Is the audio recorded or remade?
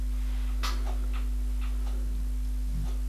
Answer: recorded